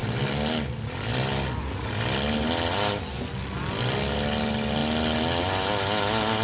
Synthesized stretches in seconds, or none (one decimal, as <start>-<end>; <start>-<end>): none